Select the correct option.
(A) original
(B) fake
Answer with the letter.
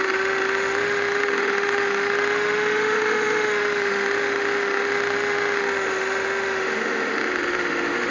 B